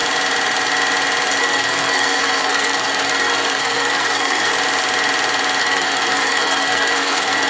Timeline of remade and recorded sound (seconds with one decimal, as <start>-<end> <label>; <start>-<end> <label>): 0.0-1.4 recorded; 1.4-4.5 remade; 4.5-5.6 recorded; 5.6-7.5 remade